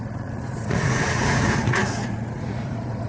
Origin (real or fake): fake